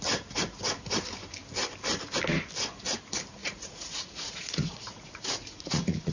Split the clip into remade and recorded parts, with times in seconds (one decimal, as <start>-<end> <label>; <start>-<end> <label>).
0.0-3.4 recorded; 3.4-6.1 remade

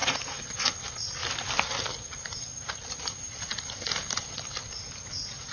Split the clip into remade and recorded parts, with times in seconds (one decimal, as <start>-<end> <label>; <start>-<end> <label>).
0.0-0.5 remade; 0.5-5.5 recorded

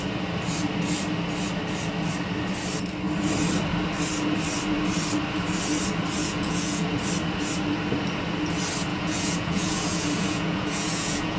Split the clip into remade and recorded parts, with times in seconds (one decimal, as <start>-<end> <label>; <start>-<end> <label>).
0.0-6.2 recorded; 6.2-6.9 remade; 6.9-8.9 recorded; 8.9-11.4 remade